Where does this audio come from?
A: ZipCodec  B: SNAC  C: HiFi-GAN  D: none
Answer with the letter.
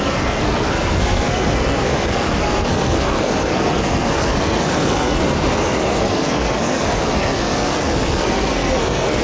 B